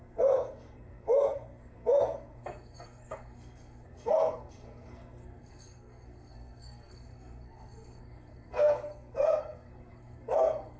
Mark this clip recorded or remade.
remade